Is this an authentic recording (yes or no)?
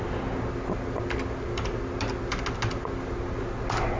yes